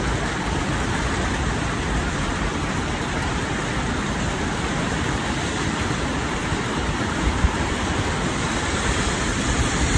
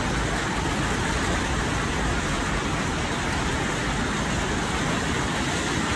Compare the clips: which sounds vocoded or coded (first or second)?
first